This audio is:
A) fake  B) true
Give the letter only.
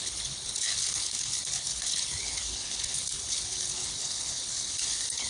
A